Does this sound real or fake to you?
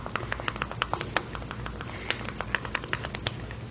real